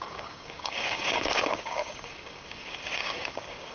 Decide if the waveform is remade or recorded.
remade